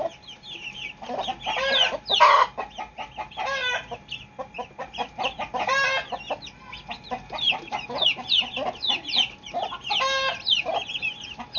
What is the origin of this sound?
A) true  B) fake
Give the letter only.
A